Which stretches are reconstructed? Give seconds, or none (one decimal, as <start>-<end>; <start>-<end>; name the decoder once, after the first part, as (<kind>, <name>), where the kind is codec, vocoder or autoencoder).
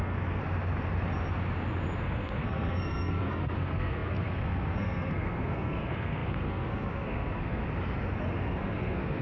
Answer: 0.0-0.4 (codec, SNAC); 2.0-7.6; 8.4-9.2